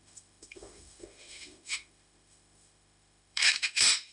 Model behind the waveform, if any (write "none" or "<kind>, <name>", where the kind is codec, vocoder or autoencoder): autoencoder, DAC-VAE